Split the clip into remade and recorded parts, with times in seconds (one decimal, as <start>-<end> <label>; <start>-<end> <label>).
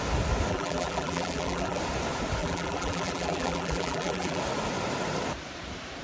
0.0-0.5 recorded; 0.5-1.8 remade; 1.8-2.4 recorded; 2.4-4.4 remade; 4.4-6.0 recorded